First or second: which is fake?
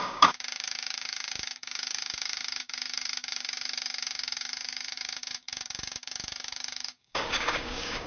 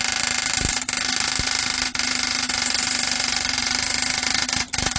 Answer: first